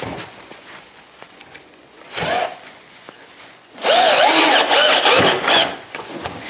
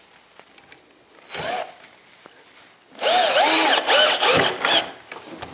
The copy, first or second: first